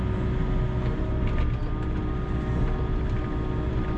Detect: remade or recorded recorded